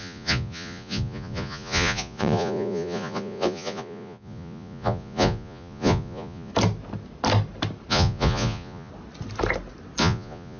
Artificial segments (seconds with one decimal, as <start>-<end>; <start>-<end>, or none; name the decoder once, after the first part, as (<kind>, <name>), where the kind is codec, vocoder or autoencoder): 0.0-6.5 (vocoder, Vocos); 7.9-8.9; 10.0-10.6